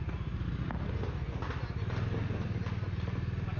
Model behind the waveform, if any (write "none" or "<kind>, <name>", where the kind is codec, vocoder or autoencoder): none